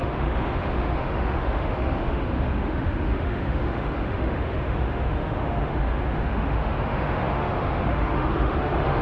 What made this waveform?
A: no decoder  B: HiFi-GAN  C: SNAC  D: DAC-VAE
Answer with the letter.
D